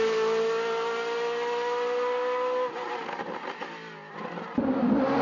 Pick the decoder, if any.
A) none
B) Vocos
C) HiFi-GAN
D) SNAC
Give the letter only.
A